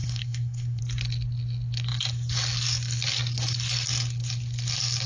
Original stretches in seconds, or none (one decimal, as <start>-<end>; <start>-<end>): 0.8-5.1

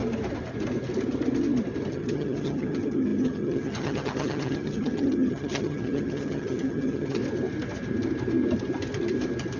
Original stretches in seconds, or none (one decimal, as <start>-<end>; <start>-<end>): 0.0-1.9; 7.2-9.6

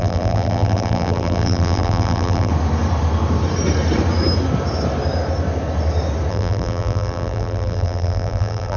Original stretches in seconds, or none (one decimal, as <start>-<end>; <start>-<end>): 2.5-6.3

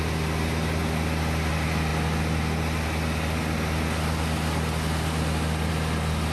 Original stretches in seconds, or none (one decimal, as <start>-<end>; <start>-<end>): 0.0-6.3

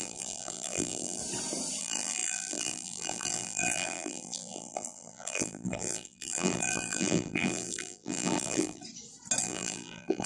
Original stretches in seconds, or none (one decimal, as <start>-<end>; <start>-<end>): 1.2-1.8; 8.8-9.4

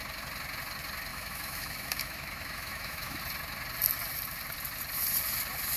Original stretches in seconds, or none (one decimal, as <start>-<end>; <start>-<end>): 0.0-1.1; 3.2-5.8

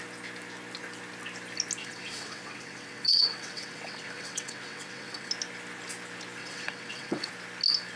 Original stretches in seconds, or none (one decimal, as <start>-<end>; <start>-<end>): 0.0-1.8; 5.3-6.4; 7.3-8.0

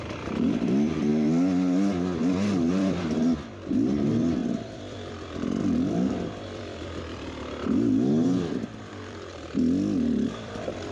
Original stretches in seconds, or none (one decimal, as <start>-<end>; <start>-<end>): 1.1-2.7